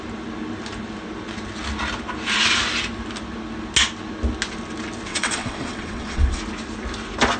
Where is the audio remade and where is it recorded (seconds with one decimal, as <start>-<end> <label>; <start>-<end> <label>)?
0.0-5.1 recorded; 5.1-6.4 remade; 6.4-7.4 recorded